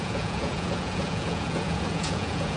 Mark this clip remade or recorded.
remade